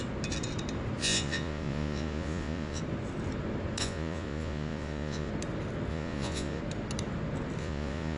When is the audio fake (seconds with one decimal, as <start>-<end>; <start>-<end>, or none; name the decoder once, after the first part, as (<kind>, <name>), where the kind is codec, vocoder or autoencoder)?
1.0-2.8 (vocoder, Vocos); 3.8-5.3; 5.9-6.6; 7.6-8.2